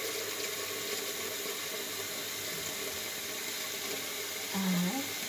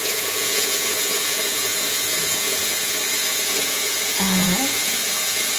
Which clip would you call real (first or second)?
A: first